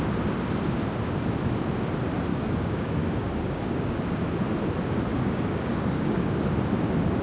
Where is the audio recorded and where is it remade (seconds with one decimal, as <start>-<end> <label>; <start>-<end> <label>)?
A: 0.0-2.3 recorded; 2.3-4.0 remade; 4.0-5.1 recorded; 5.1-6.3 remade; 6.3-7.2 recorded